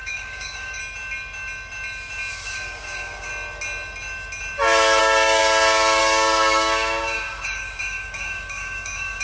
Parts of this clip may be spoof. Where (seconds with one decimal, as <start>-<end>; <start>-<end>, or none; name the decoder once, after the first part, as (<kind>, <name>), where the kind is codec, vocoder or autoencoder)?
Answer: 0.0-0.8 (codec, DAC); 2.3-3.3; 5.0-5.4; 6.0-9.2